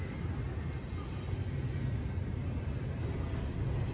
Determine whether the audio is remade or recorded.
recorded